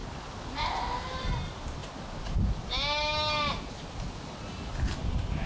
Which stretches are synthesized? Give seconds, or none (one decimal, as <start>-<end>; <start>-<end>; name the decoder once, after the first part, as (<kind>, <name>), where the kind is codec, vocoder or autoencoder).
none